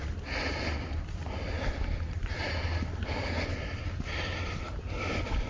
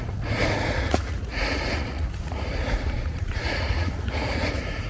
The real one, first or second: first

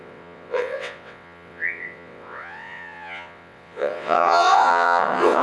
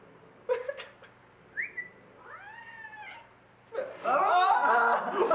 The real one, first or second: second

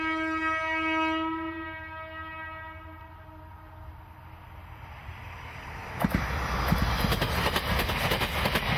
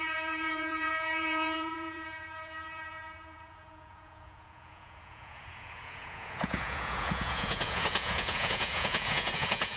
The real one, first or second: first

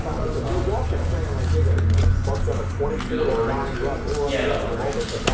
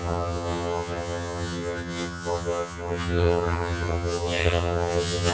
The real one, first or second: first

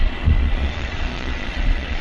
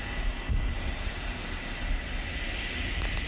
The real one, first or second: second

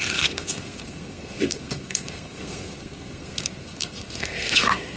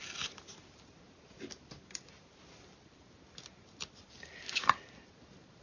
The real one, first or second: second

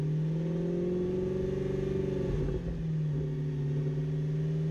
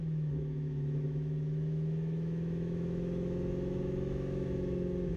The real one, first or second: first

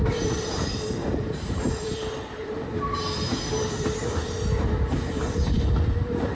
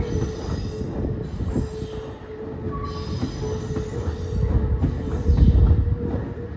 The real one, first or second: second